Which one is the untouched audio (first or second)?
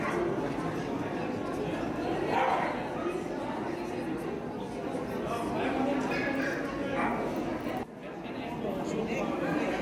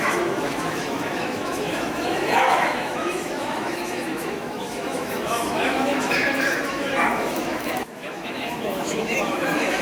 first